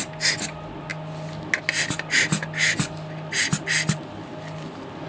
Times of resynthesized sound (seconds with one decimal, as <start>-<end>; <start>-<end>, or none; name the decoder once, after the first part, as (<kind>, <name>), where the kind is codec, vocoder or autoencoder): none

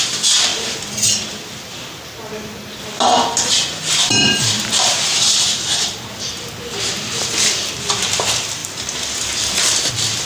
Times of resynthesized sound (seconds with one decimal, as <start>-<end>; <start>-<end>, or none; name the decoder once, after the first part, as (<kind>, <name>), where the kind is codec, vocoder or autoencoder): 0.5-2.8 (vocoder, BigVGAN v2); 8.6-9.9

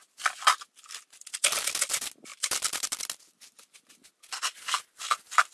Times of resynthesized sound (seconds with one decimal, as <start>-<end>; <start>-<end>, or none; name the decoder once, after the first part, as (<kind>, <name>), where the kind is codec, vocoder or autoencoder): 2.3-3.0 (vocoder, BigVGAN v2)

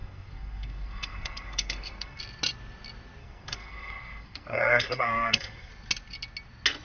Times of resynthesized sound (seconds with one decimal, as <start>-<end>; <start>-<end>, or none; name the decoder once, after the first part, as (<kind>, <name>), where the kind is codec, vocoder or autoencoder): 0.0-2.2 (codec, SNAC); 3.2-5.7

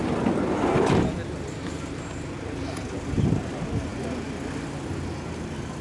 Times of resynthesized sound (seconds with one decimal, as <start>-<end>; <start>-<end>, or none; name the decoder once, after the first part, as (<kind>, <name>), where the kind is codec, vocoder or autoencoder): none

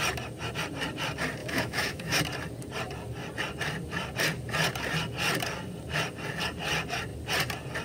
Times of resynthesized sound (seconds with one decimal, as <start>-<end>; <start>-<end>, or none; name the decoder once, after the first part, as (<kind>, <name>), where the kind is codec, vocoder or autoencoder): 1.4-2.2 (autoencoder, DAC-VAE)